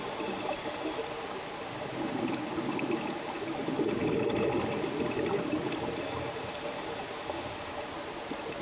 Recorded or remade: recorded